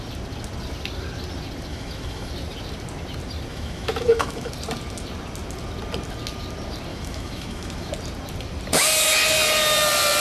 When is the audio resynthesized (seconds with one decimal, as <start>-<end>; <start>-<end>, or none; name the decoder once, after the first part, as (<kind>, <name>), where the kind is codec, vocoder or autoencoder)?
1.7-2.3 (autoencoder, DAC-VAE); 3.5-4.5; 6.9-7.9